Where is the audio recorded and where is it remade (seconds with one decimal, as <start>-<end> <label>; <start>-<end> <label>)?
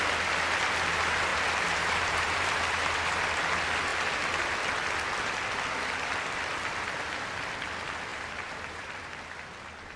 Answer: 0.0-1.3 recorded; 1.3-3.0 remade; 3.0-8.1 recorded; 8.1-9.0 remade; 9.0-10.0 recorded